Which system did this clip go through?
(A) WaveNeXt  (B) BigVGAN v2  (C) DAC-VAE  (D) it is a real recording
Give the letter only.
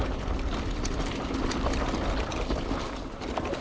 D